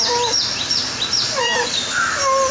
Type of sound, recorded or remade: recorded